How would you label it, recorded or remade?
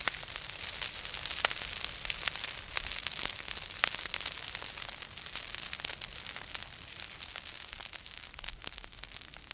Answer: recorded